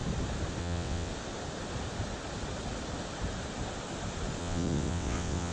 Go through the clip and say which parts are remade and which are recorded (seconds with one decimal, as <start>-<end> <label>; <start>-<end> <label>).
0.0-0.6 recorded; 0.6-1.1 remade; 1.1-4.4 recorded; 4.4-5.5 remade